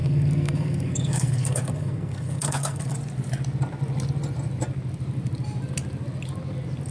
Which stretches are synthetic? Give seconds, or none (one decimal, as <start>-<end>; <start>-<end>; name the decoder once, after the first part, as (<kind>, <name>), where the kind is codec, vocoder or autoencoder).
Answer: 0.0-2.9 (codec, SNAC)